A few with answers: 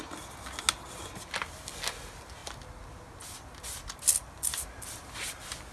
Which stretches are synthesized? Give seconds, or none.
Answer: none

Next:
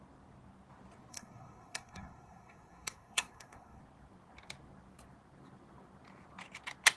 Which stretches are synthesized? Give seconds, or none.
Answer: 1.1-3.8 (codec, SNAC)

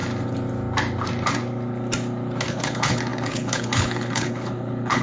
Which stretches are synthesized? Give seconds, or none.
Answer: 2.5-5.0 (codec, HILCodec)